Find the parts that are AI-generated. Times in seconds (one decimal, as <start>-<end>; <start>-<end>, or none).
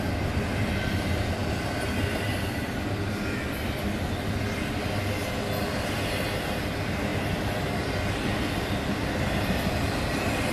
none